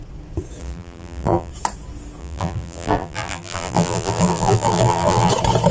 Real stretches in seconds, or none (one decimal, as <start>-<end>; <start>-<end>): 0.0-0.6; 1.5-2.2; 5.3-5.7